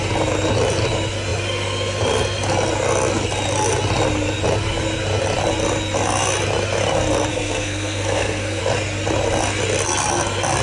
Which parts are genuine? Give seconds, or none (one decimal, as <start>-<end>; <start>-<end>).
0.0-7.3; 8.6-10.6